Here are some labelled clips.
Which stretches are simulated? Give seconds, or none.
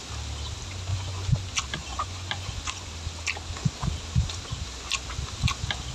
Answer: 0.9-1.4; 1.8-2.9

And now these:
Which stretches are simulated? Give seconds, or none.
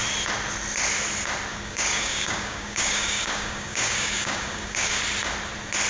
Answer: 1.5-5.0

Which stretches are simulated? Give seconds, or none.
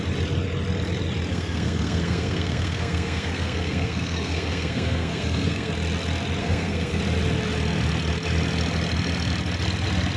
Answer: 1.3-5.7; 6.4-7.0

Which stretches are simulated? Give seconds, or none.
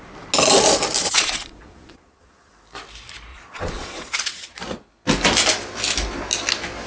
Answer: 1.0-2.5; 3.3-4.6